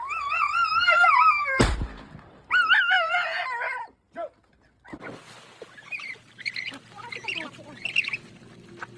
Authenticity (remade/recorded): recorded